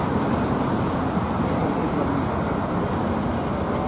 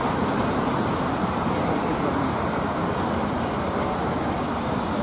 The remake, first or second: second